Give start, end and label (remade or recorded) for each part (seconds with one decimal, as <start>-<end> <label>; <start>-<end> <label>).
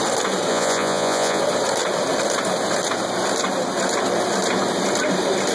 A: 0.0-0.5 recorded; 0.5-1.4 remade; 1.4-5.5 recorded